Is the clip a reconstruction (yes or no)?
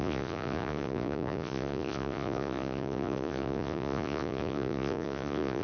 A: yes